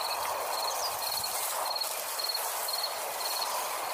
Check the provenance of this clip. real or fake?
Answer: fake